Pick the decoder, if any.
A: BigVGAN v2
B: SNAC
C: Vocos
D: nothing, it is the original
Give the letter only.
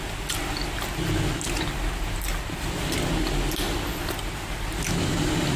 D